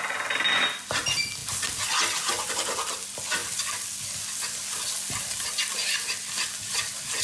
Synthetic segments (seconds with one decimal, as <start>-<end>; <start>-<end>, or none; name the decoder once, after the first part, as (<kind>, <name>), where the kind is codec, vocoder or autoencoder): none